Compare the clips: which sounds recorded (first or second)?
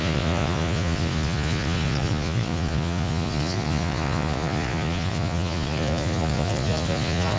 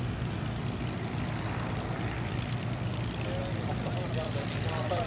second